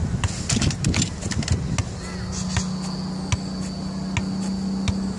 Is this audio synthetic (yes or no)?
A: no